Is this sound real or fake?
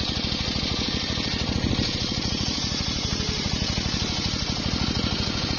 real